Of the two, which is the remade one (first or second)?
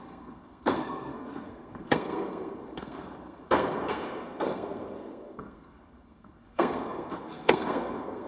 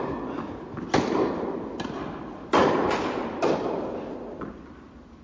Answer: first